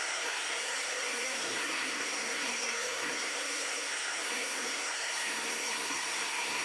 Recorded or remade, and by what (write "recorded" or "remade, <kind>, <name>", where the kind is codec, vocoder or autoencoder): remade, codec, SNAC